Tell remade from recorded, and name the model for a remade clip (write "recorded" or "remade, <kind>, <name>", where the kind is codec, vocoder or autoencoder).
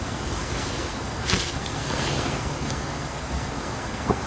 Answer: remade, codec, SNAC